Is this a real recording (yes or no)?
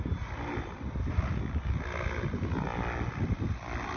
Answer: yes